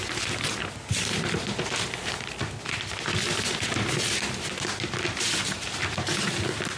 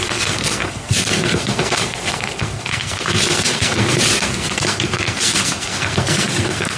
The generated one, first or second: second